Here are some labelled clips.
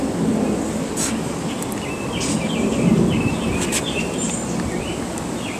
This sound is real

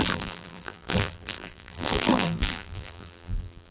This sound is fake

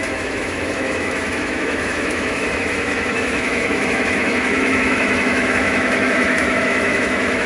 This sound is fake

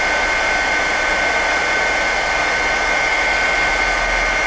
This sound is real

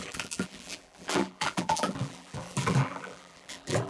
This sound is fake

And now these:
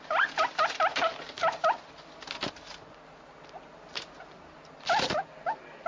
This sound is real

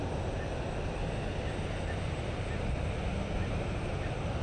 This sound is real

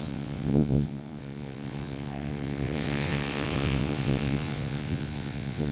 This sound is fake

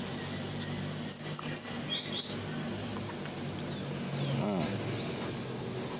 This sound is real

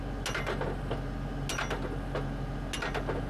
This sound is real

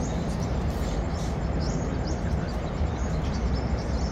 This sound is fake